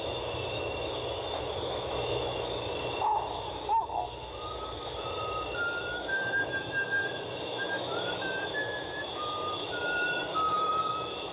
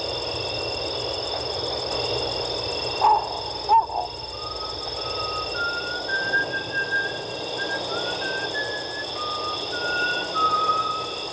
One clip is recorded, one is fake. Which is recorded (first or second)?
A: second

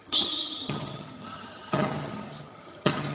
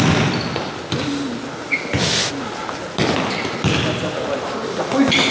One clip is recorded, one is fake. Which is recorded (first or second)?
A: second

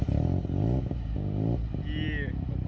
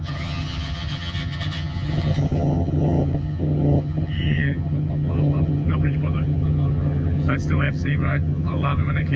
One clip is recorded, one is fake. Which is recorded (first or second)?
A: first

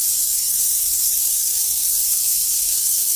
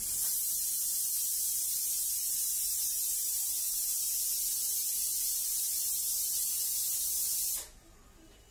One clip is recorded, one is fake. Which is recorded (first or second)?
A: second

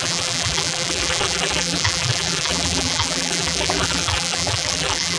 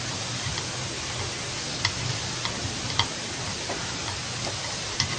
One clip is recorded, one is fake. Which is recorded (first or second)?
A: second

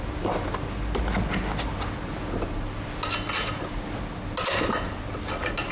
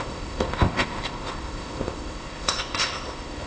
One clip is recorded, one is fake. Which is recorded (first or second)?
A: first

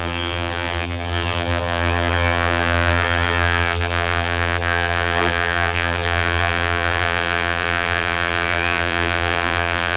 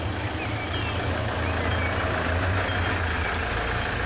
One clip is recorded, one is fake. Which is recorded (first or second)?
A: second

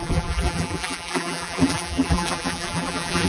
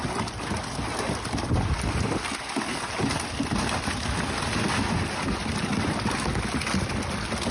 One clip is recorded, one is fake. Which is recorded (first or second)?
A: second